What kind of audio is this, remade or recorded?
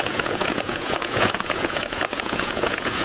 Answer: remade